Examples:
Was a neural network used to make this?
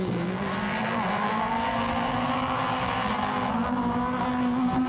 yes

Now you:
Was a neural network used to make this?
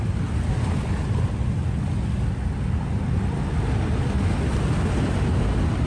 no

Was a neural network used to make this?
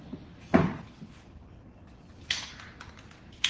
yes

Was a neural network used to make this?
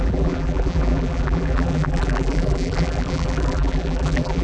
yes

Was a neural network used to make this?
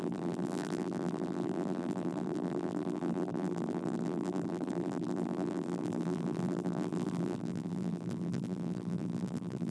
yes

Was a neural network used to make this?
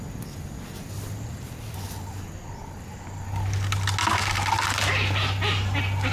no